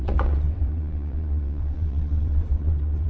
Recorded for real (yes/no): no